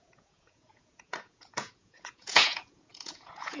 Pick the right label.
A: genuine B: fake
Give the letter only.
B